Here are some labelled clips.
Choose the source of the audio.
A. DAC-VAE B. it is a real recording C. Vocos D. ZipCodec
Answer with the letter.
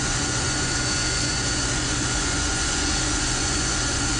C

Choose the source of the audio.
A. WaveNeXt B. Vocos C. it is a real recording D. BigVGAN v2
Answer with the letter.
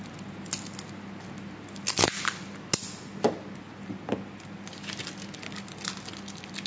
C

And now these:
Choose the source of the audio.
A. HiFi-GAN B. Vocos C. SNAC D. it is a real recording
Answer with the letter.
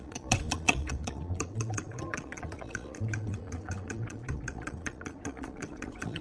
B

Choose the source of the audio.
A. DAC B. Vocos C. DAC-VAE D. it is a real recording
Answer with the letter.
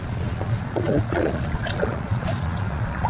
B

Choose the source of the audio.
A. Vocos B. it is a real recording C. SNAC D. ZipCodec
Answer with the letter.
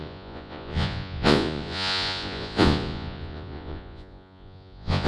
A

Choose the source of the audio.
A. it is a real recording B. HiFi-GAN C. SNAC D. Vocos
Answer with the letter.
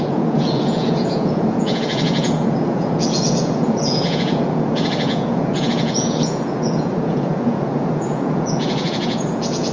D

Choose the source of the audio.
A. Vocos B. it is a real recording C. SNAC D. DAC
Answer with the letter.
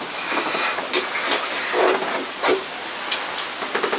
B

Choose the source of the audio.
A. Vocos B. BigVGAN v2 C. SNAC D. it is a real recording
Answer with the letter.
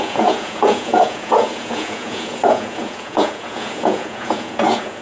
A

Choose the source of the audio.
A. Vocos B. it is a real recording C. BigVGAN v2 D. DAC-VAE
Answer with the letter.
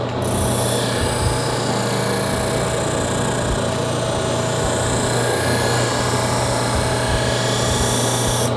B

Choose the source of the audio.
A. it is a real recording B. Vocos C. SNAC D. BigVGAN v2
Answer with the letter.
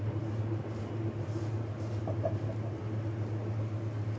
A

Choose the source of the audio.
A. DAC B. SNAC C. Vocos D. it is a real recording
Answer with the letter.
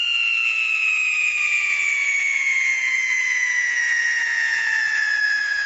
C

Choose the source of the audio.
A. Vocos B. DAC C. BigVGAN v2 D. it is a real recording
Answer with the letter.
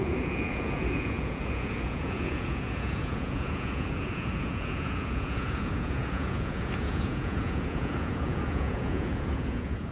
A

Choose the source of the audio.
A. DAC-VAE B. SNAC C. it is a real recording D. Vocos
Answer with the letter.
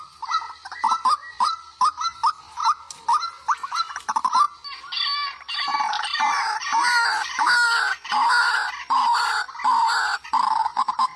C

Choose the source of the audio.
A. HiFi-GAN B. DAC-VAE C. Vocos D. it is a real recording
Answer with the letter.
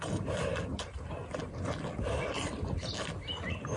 D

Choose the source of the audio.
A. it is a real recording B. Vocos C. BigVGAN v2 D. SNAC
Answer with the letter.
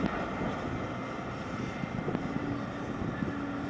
A